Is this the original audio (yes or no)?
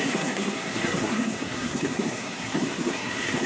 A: no